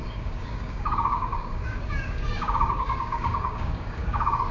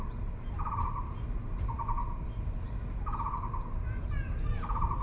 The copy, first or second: first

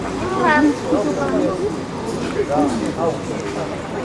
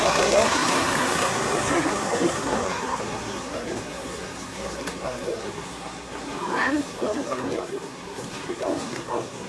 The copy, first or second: second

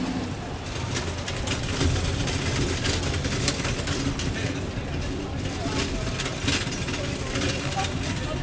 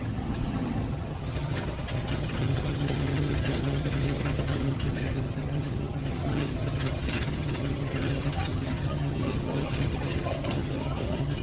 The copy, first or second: second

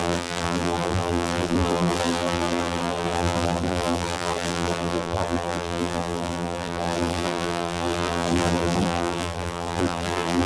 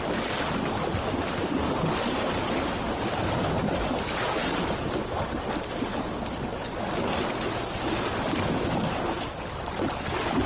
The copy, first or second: first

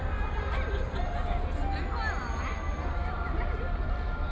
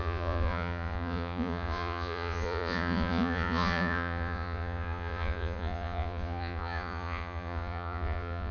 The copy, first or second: second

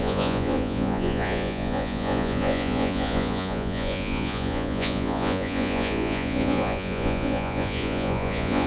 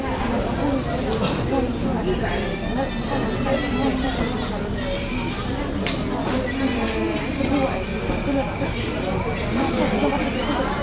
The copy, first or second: first